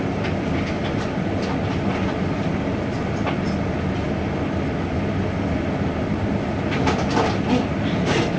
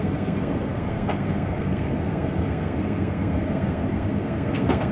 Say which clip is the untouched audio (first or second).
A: first